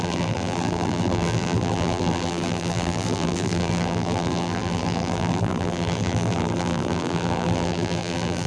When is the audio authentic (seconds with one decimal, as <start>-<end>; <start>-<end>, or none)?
none